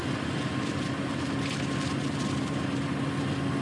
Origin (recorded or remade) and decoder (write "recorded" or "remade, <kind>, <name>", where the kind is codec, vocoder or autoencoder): recorded